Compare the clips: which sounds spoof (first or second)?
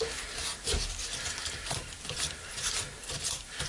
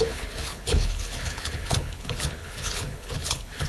second